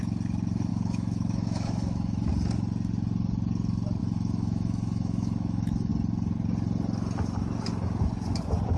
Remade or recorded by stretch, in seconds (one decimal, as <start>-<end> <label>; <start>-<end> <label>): 0.0-0.7 recorded; 0.7-2.3 remade; 2.3-4.0 recorded; 4.0-5.9 remade; 5.9-8.8 recorded